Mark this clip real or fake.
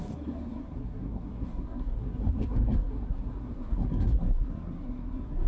fake